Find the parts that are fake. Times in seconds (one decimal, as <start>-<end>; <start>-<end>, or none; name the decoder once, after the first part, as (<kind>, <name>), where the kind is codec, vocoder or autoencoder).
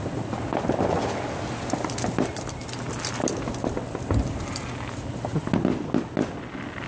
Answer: none